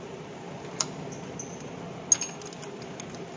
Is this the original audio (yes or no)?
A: yes